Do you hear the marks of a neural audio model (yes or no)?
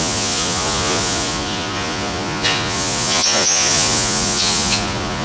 yes